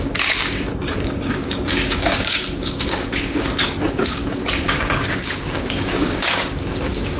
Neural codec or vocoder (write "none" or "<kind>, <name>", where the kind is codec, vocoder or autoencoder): codec, DAC